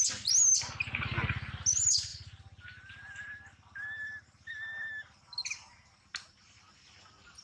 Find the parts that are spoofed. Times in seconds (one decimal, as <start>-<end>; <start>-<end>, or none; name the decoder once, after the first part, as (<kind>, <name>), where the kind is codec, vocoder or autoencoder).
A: none